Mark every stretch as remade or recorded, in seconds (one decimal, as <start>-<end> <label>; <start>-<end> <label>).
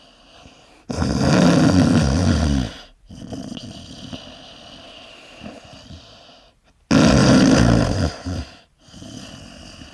0.0-2.2 recorded; 2.2-3.1 remade; 3.1-7.2 recorded; 7.2-8.8 remade; 8.8-9.9 recorded